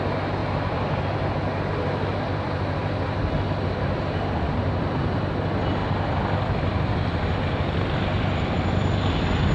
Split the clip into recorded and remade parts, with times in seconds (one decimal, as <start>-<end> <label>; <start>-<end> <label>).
0.0-0.4 recorded; 0.4-1.0 remade; 1.0-2.1 recorded; 2.1-3.2 remade; 3.2-9.5 recorded